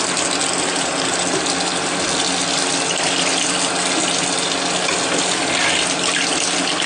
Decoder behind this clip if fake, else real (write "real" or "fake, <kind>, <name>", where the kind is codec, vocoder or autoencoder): real